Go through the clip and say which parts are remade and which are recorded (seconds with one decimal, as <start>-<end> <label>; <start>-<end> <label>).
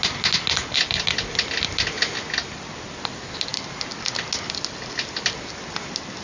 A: 0.0-6.2 recorded